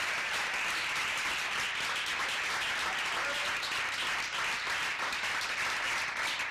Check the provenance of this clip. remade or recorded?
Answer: remade